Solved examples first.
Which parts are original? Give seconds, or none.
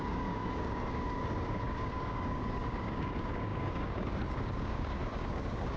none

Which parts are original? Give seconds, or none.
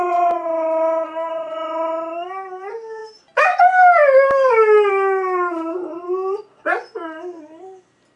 0.0-8.2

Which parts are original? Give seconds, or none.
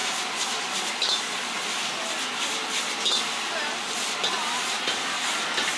0.0-5.8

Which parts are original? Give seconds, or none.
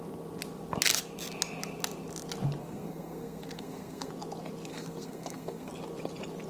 0.0-2.6; 4.1-4.7; 5.7-6.5